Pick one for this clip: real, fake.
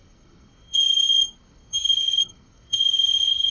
fake